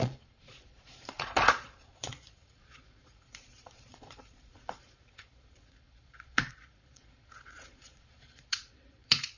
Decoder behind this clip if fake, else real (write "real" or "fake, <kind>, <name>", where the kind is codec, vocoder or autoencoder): fake, vocoder, Vocos